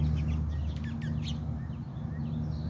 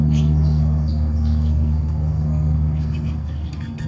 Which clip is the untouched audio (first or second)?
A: first